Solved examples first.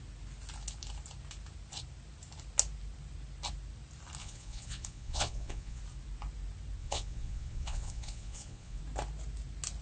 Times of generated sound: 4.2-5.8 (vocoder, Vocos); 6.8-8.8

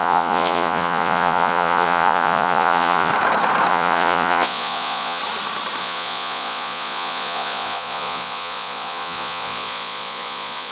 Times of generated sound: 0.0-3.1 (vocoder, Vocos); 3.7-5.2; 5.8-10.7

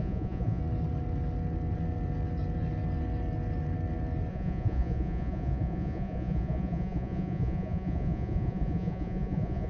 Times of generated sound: 0.0-0.6 (vocoder, Vocos); 4.3-9.7

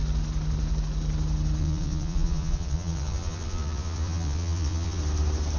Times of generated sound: 1.6-5.0 (vocoder, Vocos)

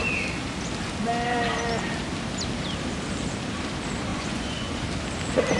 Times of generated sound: 4.1-4.8 (vocoder, Vocos)

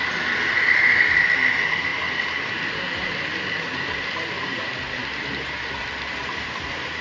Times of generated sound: none

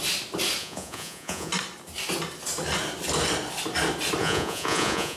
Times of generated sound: 0.6-1.5 (vocoder, Vocos); 4.2-5.2

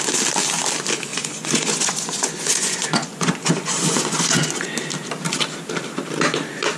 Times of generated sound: 1.1-4.7 (vocoder, Vocos)